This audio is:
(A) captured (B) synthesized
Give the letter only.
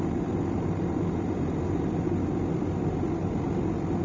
A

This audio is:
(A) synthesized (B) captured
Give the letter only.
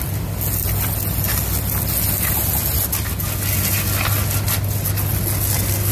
B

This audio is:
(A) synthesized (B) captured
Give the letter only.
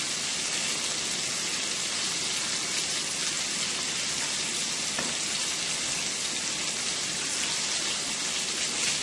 B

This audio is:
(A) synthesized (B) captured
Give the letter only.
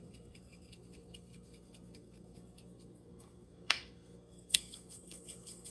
A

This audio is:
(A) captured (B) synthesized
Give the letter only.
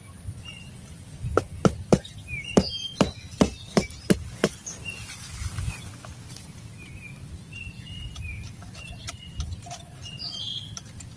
A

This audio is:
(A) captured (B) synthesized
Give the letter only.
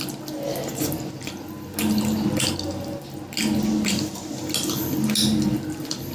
A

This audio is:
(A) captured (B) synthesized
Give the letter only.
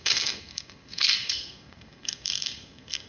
B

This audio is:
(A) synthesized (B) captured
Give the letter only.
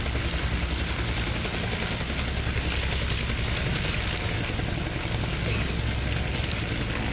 B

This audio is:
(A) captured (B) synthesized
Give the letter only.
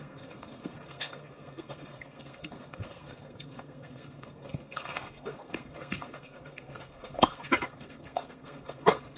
B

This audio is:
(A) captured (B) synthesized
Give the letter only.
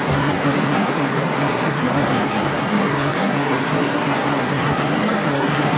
B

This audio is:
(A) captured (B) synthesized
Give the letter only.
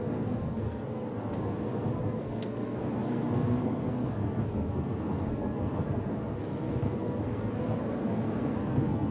B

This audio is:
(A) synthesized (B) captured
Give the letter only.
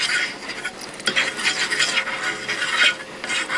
B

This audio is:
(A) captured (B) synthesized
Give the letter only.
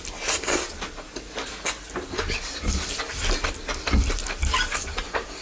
A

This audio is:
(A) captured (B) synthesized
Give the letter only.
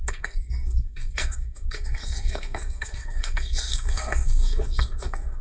B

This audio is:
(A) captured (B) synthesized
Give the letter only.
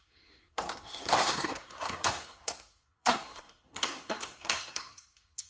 B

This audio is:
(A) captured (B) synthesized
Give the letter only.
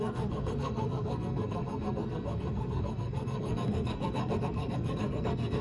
B